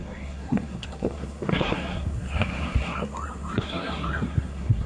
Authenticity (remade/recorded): remade